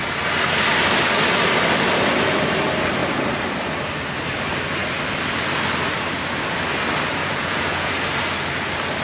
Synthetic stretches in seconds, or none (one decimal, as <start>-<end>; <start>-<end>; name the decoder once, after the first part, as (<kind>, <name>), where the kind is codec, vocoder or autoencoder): 7.2-7.9 (vocoder, Vocos)